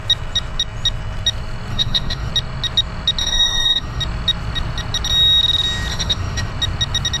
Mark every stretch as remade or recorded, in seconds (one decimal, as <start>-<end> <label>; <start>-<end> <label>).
0.0-1.7 recorded; 1.7-2.3 remade; 2.3-3.2 recorded; 3.2-4.0 remade; 4.0-5.9 recorded; 5.9-6.5 remade; 6.5-7.2 recorded